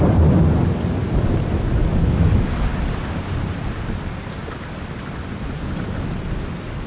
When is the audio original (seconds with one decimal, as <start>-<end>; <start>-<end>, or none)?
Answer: 0.0-6.9